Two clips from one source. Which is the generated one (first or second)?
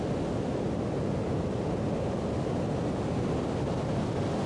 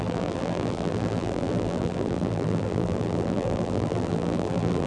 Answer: second